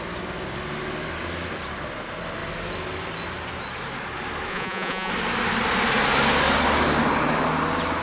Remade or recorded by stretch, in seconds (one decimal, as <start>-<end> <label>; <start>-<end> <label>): 0.0-4.5 recorded; 4.5-5.1 remade; 5.1-8.0 recorded